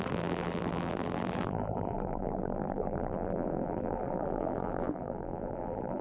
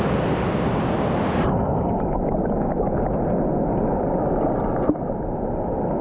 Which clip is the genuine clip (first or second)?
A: second